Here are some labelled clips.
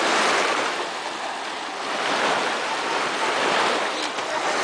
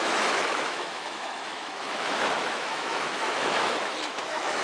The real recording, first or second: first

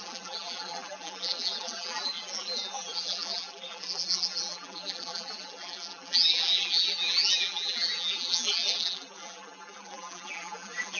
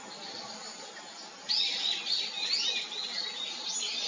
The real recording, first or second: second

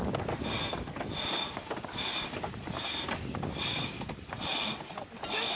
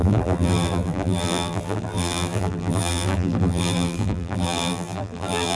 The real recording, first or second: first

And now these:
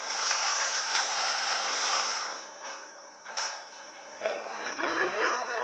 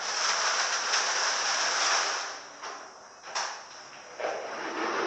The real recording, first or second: second